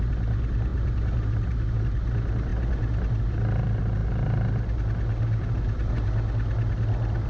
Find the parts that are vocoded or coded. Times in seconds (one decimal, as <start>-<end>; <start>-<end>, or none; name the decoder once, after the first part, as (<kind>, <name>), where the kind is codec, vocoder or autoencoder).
none